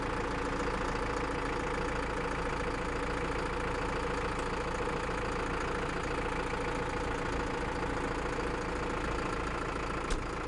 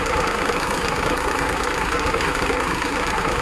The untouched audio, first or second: first